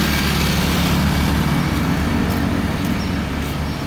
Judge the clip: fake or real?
real